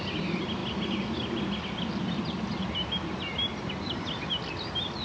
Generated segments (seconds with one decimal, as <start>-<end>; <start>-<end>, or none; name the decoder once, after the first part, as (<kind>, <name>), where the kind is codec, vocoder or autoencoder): none